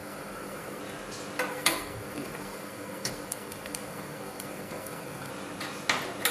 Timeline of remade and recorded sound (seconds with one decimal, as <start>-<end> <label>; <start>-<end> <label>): 0.0-0.8 remade; 0.8-1.5 recorded; 1.5-5.3 remade; 5.3-6.3 recorded